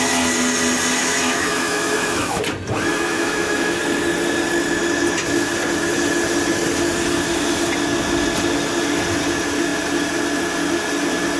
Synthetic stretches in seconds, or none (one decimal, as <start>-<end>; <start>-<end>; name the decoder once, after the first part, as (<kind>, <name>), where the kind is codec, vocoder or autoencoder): 1.0-2.4 (autoencoder, DAC-VAE); 2.9-3.8